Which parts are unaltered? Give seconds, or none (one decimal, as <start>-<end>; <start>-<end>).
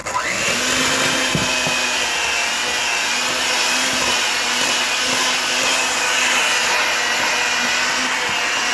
0.0-8.7